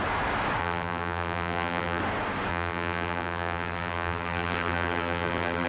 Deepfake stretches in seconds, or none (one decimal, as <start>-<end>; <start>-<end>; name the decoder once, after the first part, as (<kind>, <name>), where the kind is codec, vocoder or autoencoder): 0.6-2.0 (vocoder, BigVGAN v2); 2.5-5.7